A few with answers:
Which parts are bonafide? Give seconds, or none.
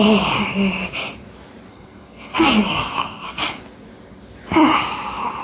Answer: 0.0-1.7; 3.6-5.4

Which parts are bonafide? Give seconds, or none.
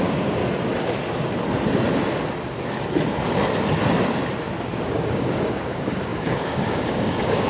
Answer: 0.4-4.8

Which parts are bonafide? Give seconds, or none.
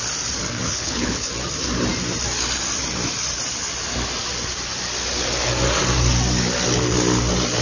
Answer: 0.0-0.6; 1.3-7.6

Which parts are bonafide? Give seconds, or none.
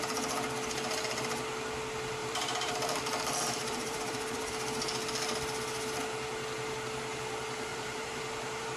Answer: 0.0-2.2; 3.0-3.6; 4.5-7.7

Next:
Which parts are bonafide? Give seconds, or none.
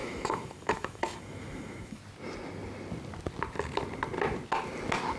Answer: 2.0-5.2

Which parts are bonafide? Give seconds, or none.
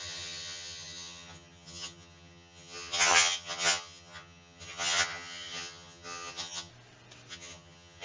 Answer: 6.7-7.3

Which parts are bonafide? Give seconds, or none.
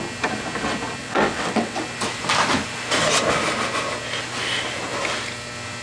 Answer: 0.0-1.0; 1.8-5.8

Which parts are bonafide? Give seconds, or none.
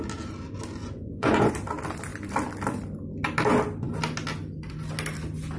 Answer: 0.0-0.8; 1.5-5.6